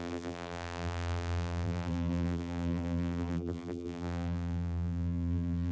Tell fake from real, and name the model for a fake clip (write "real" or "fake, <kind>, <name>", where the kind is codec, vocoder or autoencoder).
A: fake, vocoder, BigVGAN v2